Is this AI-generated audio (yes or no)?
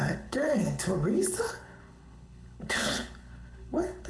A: yes